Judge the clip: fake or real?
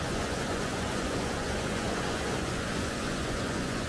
fake